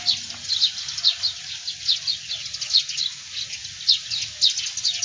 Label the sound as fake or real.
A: real